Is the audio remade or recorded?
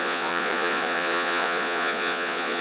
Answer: remade